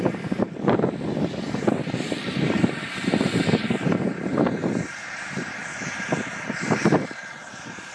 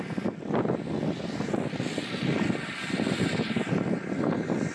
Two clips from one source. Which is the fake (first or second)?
first